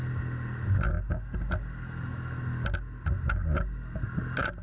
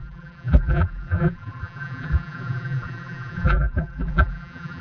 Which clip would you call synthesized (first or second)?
second